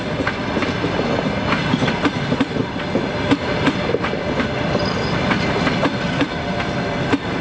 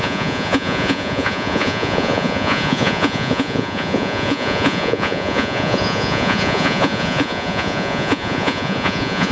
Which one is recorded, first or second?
first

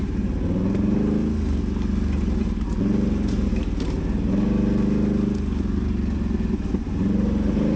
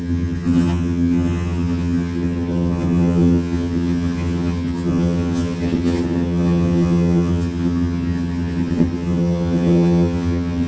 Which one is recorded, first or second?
first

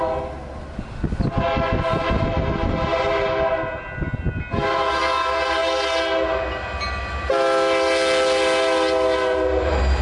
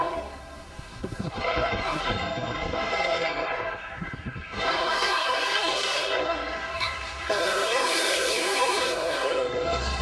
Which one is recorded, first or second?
first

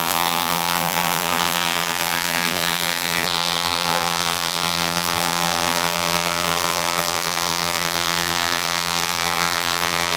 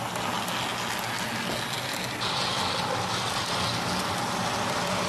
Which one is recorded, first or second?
second